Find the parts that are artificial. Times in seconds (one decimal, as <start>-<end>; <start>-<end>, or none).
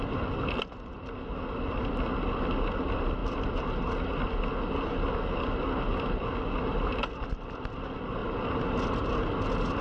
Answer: 3.2-3.9; 6.9-7.7